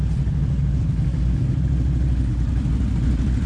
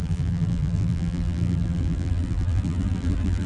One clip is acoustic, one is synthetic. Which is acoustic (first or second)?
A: first